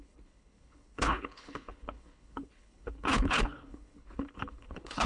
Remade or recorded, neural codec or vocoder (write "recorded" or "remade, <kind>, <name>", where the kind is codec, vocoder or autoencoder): remade, codec, HILCodec